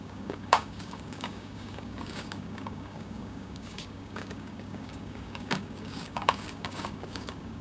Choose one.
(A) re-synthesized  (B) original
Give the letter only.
A